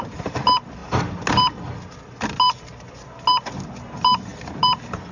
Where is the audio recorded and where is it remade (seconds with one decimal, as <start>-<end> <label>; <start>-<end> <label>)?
0.0-5.1 recorded